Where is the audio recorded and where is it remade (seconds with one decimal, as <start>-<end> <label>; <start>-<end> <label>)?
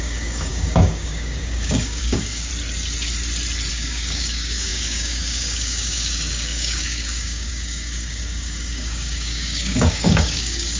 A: 0.0-2.5 remade; 2.5-3.7 recorded; 3.7-10.8 remade